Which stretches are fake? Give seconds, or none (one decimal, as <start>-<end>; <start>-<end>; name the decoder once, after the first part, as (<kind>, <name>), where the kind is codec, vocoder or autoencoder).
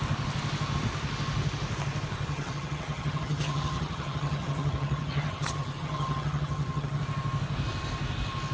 2.3-7.0 (vocoder, HiFi-GAN)